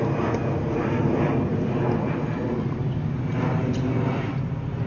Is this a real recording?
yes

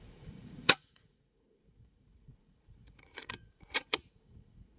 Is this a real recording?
no